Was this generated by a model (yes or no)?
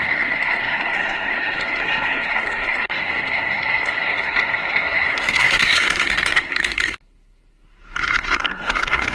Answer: yes